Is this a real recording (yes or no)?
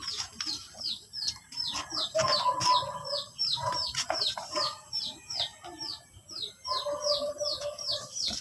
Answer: no